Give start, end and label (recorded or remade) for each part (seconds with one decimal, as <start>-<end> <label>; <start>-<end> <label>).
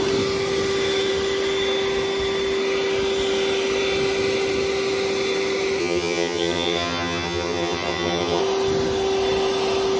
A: 0.0-5.8 recorded; 5.8-8.4 remade; 8.4-10.0 recorded